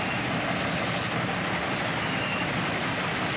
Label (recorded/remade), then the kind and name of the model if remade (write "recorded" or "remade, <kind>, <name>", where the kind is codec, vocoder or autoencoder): recorded